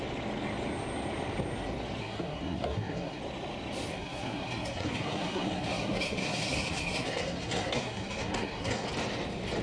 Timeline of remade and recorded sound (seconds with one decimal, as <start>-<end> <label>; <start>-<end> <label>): 0.0-2.0 recorded; 2.0-3.2 remade; 3.2-3.9 recorded; 3.9-8.9 remade; 8.9-9.6 recorded